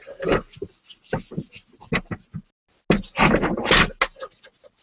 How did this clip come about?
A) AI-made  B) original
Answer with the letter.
B